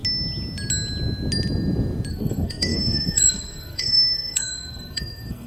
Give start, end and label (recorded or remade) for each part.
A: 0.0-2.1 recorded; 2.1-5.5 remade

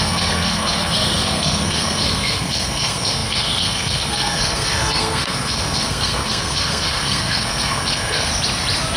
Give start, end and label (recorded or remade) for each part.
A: 0.0-8.3 remade; 8.3-9.0 recorded

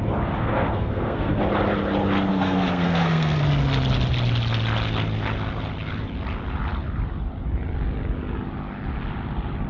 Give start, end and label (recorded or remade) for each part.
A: 0.0-0.4 recorded; 0.4-1.4 remade; 1.4-2.3 recorded; 2.3-3.4 remade; 3.4-9.7 recorded

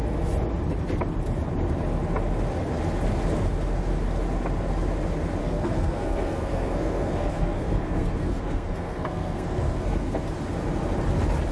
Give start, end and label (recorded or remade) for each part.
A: 0.0-5.4 recorded; 5.4-10.2 remade; 10.2-11.5 recorded